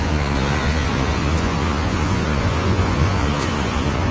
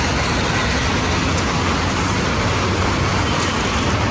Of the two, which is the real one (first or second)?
second